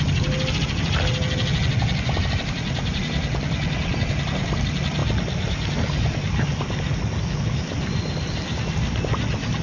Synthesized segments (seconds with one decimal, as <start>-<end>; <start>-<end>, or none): none